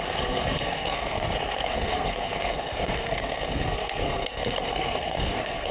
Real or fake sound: fake